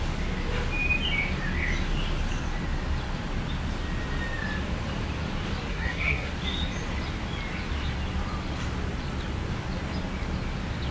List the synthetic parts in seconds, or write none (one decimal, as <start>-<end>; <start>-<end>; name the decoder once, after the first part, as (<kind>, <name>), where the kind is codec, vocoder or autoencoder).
5.7-6.3 (codec, SNAC)